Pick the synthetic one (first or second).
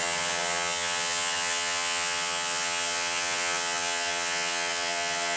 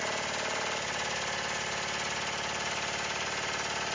first